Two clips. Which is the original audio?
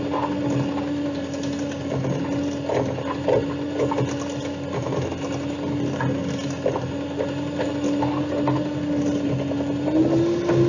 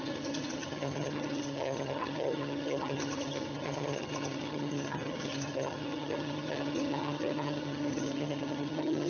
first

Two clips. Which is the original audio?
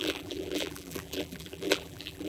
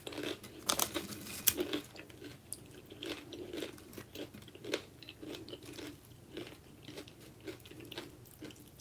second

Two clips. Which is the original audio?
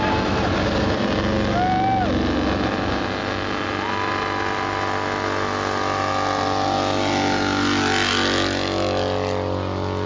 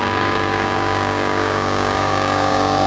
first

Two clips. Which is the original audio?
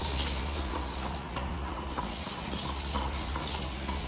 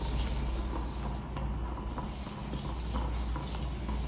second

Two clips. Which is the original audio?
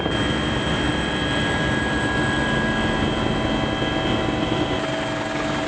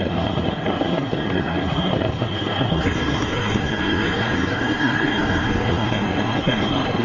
first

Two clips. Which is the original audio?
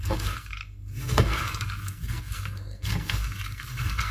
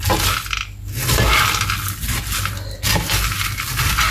second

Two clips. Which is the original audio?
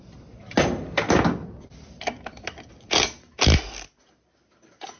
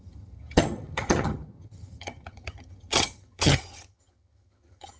first